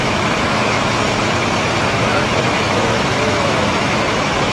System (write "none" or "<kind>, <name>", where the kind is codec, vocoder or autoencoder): autoencoder, DAC-VAE